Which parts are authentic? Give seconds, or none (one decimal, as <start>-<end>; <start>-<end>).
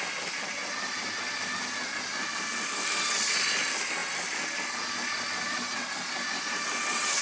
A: 0.0-7.2